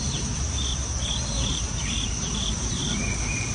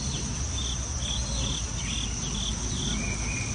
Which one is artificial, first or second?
first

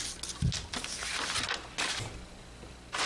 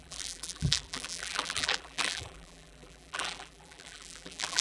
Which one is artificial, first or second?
second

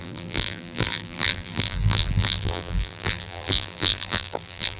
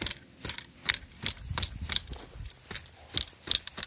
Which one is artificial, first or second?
first